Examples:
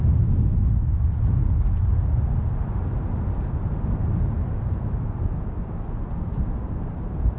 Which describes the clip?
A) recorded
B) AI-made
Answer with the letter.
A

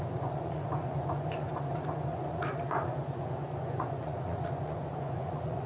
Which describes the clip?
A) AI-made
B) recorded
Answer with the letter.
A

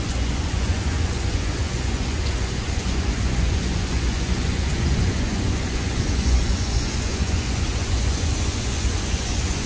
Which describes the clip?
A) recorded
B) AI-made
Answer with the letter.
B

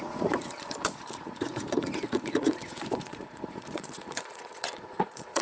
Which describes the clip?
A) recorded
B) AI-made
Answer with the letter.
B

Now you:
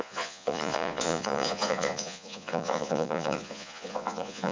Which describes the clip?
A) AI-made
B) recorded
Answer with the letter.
A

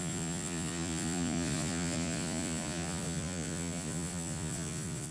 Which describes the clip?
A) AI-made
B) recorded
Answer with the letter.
A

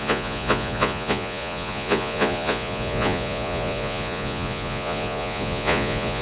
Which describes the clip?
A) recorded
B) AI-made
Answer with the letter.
B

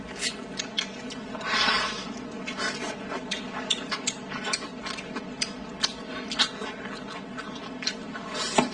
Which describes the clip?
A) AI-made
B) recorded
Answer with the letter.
B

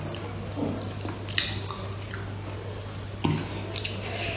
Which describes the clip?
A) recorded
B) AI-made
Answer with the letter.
A